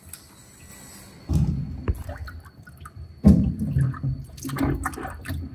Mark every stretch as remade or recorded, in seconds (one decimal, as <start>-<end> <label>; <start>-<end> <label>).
0.0-5.5 recorded